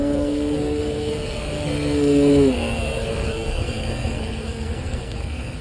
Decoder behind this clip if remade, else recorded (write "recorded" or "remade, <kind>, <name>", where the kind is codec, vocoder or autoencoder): remade, codec, SNAC